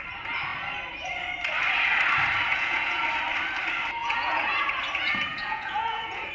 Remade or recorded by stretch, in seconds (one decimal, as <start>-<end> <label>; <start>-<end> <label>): 0.0-2.5 recorded; 2.5-3.0 remade; 3.0-4.0 recorded; 4.0-4.7 remade; 4.7-5.3 recorded; 5.3-6.3 remade